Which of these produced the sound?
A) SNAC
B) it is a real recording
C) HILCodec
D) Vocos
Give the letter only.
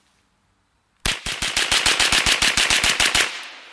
B